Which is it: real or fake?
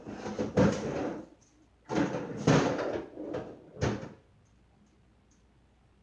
real